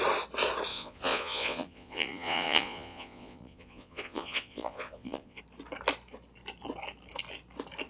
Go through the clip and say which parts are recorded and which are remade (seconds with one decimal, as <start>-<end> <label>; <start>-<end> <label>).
0.0-0.7 recorded; 0.7-5.4 remade; 5.4-7.9 recorded